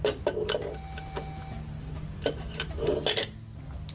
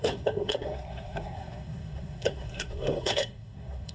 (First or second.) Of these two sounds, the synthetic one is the second